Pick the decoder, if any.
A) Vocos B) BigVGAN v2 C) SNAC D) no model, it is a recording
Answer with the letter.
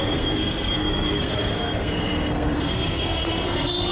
C